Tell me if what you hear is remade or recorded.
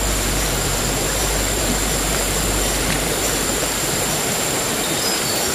remade